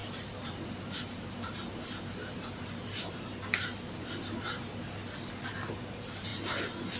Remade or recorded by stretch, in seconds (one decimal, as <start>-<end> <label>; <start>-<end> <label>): 0.0-3.7 remade; 3.7-5.5 recorded; 5.5-6.3 remade; 6.3-7.0 recorded